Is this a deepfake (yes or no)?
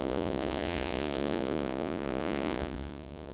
yes